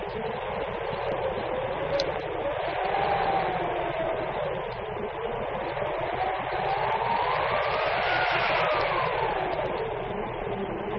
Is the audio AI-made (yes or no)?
no